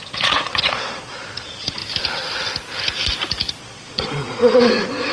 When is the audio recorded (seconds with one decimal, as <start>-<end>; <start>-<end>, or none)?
1.8-3.6